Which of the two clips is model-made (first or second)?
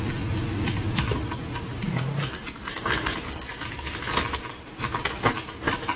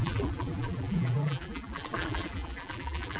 second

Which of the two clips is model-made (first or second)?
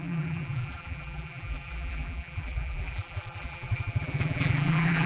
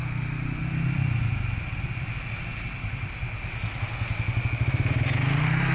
first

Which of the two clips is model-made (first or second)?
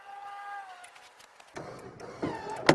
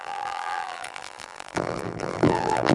second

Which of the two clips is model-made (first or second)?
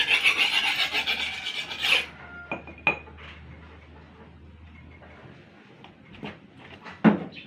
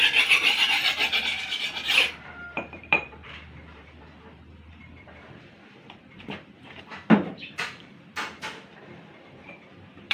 second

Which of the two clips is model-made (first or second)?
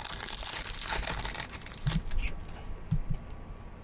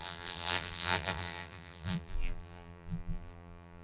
second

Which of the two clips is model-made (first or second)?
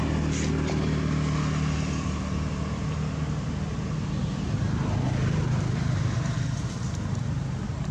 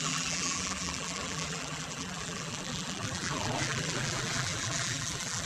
second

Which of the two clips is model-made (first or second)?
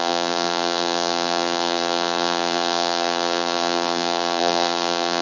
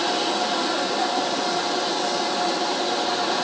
first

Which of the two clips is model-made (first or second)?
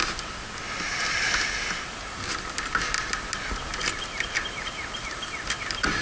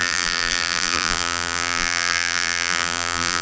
second